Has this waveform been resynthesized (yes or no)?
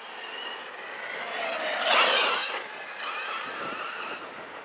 no